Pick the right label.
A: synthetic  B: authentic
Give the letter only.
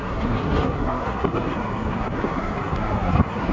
A